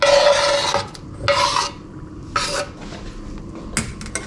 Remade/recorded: recorded